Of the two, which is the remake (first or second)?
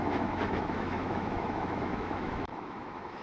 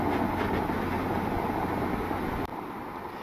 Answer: first